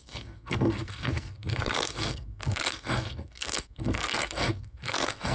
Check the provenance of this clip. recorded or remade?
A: remade